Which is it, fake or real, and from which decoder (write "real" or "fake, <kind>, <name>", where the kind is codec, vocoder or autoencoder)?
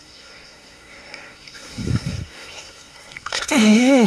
fake, codec, SNAC